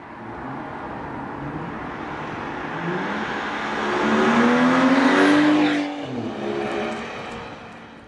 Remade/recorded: recorded